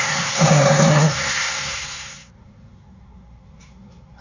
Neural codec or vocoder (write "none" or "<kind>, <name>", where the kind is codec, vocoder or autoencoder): codec, SNAC